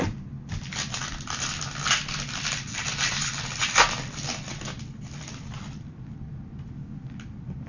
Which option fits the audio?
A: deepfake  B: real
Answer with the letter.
B